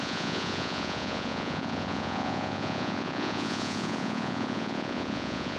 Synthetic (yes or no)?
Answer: yes